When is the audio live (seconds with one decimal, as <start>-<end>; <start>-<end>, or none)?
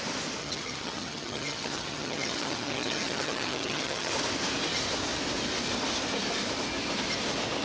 0.0-0.4; 4.1-7.6